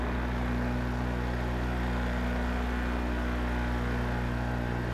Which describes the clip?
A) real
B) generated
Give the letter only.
A